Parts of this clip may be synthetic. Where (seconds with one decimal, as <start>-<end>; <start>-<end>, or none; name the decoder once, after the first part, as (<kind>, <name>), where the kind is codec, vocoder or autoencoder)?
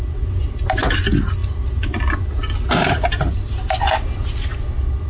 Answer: none